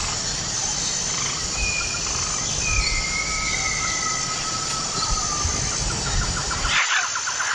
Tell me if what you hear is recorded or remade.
recorded